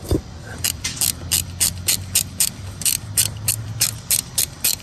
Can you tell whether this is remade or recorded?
remade